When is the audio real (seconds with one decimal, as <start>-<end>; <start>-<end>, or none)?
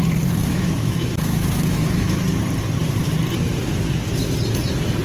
0.0-0.4; 2.4-5.0